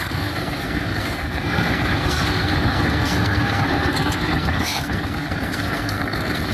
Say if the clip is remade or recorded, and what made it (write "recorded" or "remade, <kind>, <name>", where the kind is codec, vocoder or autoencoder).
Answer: remade, codec, SNAC